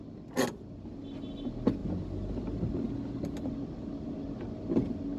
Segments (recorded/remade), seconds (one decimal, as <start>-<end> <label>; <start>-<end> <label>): 0.0-5.2 recorded